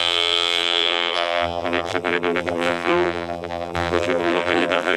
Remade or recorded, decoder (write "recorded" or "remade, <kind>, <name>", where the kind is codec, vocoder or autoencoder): remade, vocoder, BigVGAN v2